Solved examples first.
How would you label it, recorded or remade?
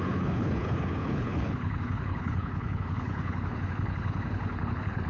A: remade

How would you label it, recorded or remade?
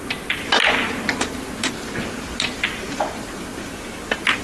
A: recorded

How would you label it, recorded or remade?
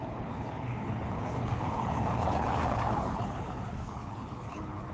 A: remade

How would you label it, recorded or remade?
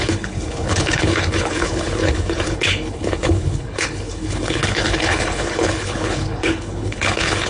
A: remade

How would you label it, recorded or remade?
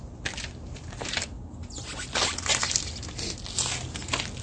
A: recorded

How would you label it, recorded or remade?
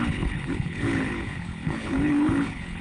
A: remade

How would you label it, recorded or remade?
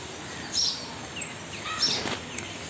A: recorded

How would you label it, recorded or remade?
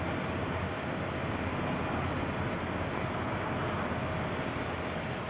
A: recorded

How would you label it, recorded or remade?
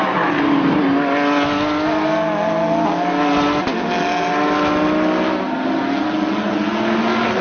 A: recorded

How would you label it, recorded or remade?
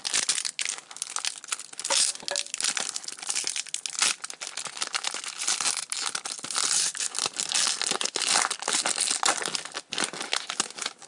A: recorded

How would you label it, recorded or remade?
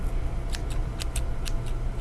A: recorded